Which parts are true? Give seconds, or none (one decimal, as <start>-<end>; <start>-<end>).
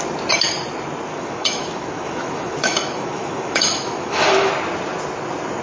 0.0-1.1; 4.5-5.6